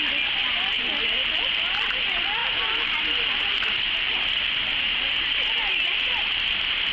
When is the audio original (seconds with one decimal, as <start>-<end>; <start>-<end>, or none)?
0.0-0.4; 1.5-2.4; 6.5-6.9